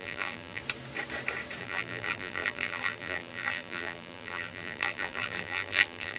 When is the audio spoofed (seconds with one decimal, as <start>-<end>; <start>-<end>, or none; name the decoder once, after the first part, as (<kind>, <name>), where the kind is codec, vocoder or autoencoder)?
0.0-0.6 (vocoder, BigVGAN v2); 1.6-6.2